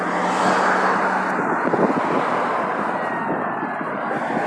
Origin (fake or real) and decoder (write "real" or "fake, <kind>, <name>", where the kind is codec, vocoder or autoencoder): real